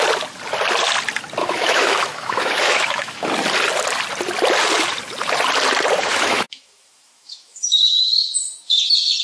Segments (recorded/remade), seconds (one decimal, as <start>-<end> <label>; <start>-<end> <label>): 0.0-1.4 recorded; 1.4-3.3 remade; 3.3-6.1 recorded; 6.1-8.3 remade; 8.3-9.2 recorded

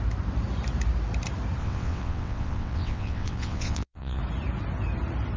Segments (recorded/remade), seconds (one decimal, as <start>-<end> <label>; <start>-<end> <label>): 0.0-1.6 recorded; 1.6-4.2 remade; 4.2-5.4 recorded

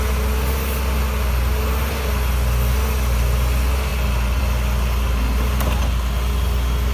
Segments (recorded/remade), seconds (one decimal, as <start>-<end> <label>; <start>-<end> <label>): 0.0-6.9 recorded

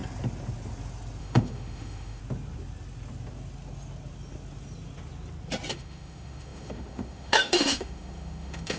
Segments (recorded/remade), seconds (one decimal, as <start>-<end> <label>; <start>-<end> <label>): 0.0-1.2 recorded; 1.2-2.2 remade; 2.2-5.7 recorded; 5.7-8.8 remade

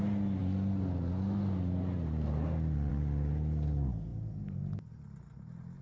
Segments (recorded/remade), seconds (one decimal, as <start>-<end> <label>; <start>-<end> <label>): 0.0-5.8 recorded